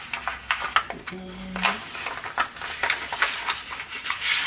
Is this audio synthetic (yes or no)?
no